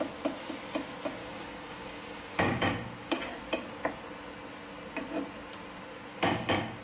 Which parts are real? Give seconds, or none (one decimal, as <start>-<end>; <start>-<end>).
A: 0.0-1.2; 3.2-6.1

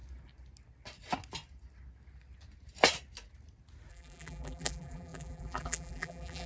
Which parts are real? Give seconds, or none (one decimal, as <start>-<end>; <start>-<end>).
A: 0.0-3.9

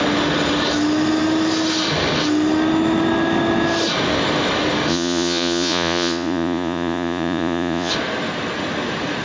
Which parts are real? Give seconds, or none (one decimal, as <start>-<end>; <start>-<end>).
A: 0.0-4.9; 7.9-9.2

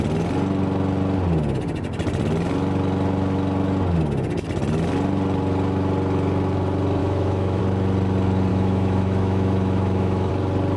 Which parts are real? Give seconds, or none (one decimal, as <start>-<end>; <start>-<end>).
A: 0.0-7.0; 7.6-8.5; 10.3-10.8

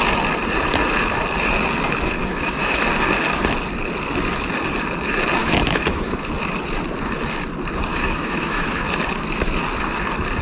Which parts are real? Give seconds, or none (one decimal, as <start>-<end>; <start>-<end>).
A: 0.0-2.2; 2.8-5.4; 6.1-7.9; 8.8-10.4

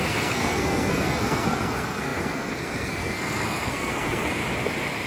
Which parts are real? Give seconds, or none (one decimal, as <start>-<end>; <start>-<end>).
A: 4.4-5.1